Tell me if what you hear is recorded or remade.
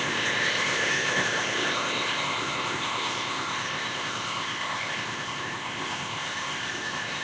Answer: remade